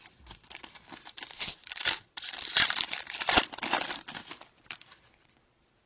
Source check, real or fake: fake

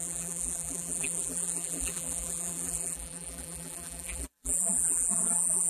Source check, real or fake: fake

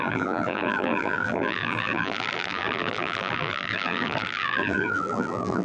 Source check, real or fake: fake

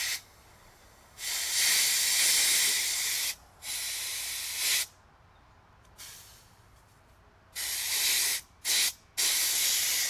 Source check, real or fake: real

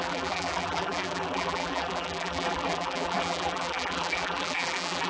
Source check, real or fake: fake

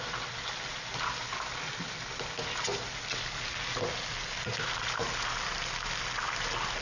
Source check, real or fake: real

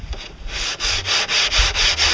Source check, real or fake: real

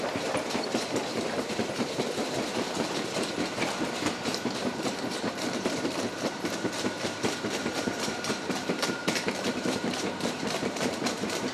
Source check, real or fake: fake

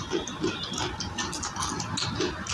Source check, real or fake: real